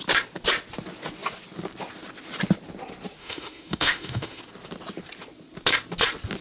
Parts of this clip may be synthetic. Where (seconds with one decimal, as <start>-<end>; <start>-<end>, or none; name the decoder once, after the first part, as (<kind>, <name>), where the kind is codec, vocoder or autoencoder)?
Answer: 3.2-4.4 (autoencoder, DAC-VAE)